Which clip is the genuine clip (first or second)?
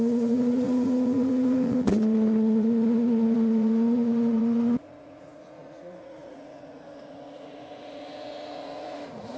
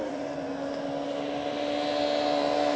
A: second